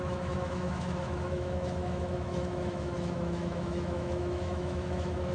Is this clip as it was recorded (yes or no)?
no